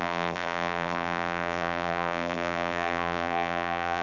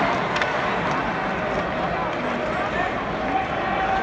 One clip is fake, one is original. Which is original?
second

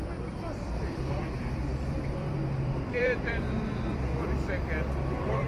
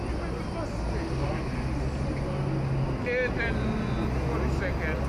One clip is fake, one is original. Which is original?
second